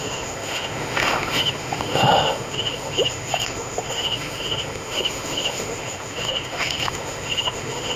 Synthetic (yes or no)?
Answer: yes